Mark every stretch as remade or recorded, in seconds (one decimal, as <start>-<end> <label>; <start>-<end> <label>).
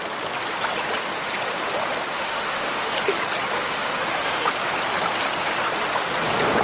0.0-2.1 recorded; 2.1-3.0 remade; 3.0-3.6 recorded; 3.6-4.5 remade; 4.5-6.6 recorded